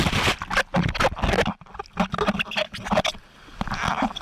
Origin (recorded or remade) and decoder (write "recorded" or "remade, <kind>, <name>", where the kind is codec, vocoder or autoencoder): recorded